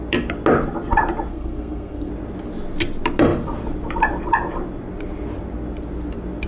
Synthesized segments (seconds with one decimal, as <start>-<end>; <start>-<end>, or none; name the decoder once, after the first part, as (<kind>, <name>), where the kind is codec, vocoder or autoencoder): 1.3-2.1 (codec, SNAC)